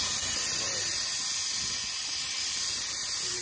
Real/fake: real